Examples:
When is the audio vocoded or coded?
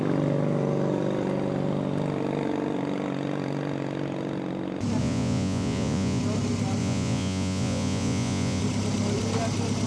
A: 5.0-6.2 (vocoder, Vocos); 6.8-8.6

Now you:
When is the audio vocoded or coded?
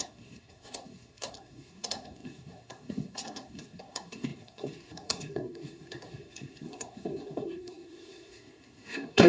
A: 0.0-9.3 (codec, SNAC)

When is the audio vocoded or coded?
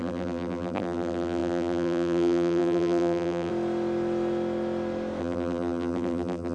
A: 0.0-3.5 (vocoder, BigVGAN v2); 5.2-6.5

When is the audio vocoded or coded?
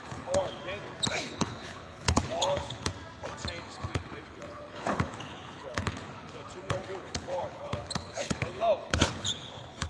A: 0.0-0.6 (codec, HILCodec); 1.1-2.9; 3.6-9.9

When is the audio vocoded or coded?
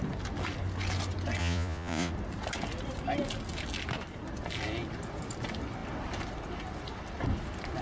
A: 1.4-2.1 (vocoder, Vocos)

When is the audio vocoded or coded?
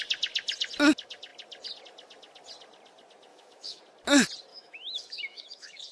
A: 3.3-3.8 (autoencoder, DAC-VAE); 4.5-5.9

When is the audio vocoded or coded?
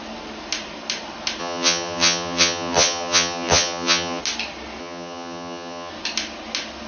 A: 1.4-4.2 (vocoder, HiFi-GAN); 4.8-5.9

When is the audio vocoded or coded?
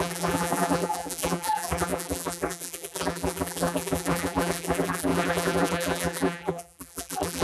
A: 0.0-7.4 (vocoder, BigVGAN v2)